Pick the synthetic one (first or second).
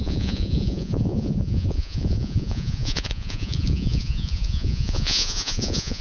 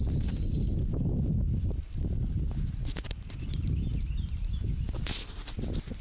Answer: first